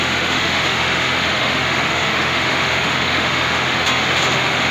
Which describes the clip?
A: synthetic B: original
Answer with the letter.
A